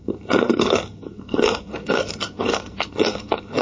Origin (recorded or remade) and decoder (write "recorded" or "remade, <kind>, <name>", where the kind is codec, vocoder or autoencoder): remade, codec, SNAC